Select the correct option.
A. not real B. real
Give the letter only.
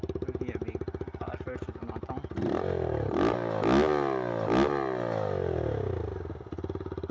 B